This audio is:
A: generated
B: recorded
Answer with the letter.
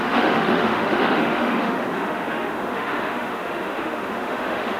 A